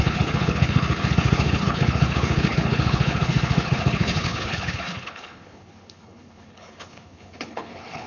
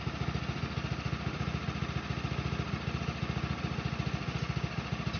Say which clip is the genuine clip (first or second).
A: second